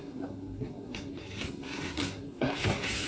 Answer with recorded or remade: remade